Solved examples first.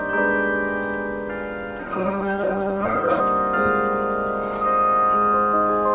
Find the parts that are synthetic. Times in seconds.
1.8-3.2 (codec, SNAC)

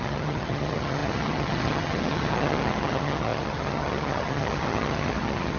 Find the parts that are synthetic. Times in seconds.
0.0-5.6 (vocoder, HiFi-GAN)

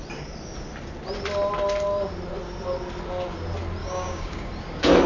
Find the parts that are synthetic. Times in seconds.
3.8-4.5 (codec, DAC)

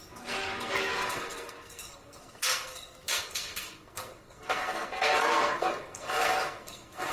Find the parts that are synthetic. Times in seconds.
0.0-7.1 (codec, SNAC)

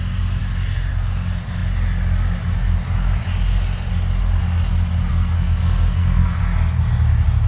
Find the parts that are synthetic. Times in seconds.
5.1-6.4 (codec, SNAC)

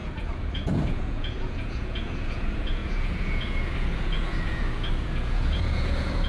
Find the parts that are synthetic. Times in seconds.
0.0-6.3 (vocoder, Vocos)